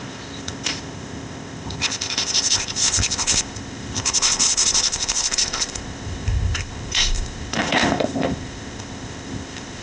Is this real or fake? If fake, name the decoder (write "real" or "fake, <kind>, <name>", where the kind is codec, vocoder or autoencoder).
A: fake, codec, ZipCodec